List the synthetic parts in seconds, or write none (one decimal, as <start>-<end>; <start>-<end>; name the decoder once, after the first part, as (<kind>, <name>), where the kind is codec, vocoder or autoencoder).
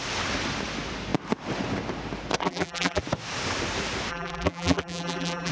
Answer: 2.4-3.0 (vocoder, BigVGAN v2); 4.1-5.5